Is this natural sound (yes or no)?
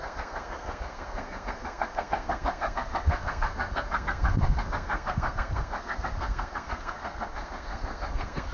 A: no